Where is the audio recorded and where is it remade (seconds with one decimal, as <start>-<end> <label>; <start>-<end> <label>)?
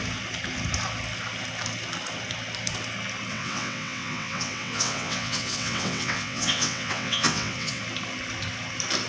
0.0-3.3 recorded; 3.3-7.8 remade; 7.8-9.1 recorded